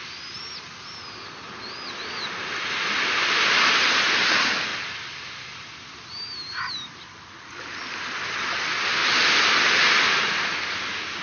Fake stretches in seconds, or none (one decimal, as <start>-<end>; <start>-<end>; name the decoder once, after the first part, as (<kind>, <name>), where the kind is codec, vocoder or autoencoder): none